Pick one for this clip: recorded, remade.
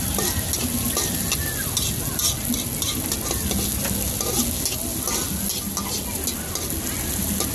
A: recorded